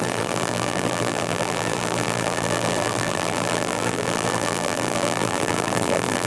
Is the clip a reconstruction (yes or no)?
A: yes